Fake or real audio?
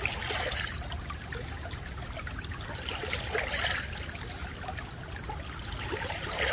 real